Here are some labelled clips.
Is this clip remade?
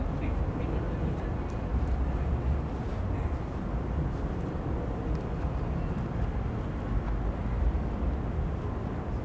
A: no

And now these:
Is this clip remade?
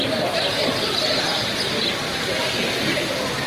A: yes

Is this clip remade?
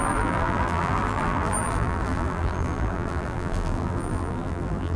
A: yes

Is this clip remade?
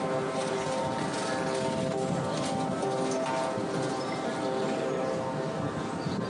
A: no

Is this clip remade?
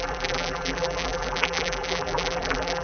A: yes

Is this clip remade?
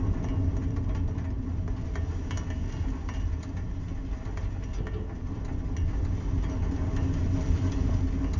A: no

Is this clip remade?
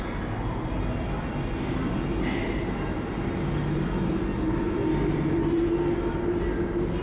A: no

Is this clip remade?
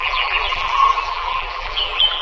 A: yes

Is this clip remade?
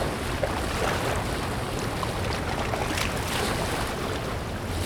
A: no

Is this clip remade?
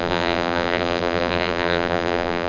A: yes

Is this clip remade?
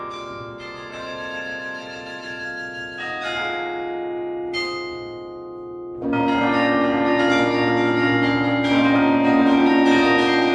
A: no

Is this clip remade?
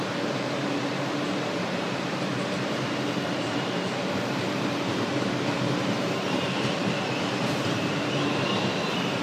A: yes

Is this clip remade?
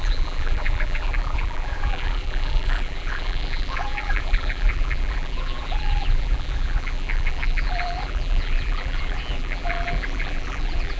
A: yes